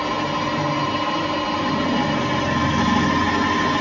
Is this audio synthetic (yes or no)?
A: no